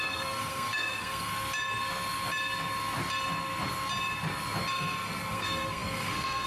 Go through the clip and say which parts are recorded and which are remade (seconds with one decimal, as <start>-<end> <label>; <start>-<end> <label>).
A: 0.0-1.3 remade; 1.3-4.7 recorded; 4.7-6.5 remade